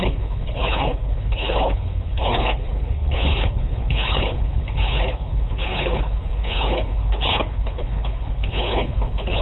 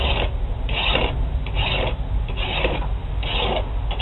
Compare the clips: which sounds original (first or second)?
second